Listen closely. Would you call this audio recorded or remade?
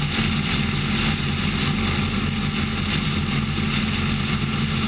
recorded